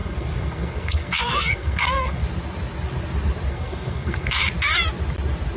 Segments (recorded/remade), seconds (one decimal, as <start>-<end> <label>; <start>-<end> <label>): 0.0-2.2 remade; 2.2-3.5 recorded; 3.5-4.4 remade; 4.4-5.6 recorded